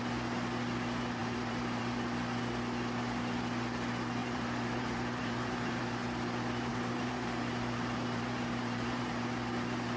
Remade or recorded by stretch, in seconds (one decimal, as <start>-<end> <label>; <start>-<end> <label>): 0.0-1.2 recorded; 1.2-1.8 remade; 1.8-4.2 recorded; 4.2-5.8 remade; 5.8-6.7 recorded; 6.7-9.2 remade; 9.2-10.0 recorded